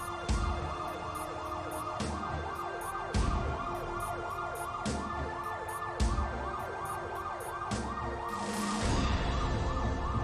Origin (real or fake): real